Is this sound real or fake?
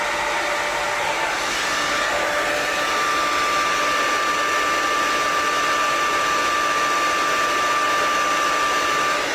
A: real